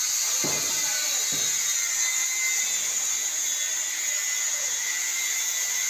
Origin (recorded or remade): recorded